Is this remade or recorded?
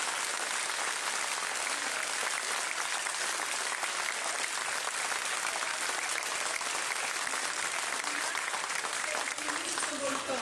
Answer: recorded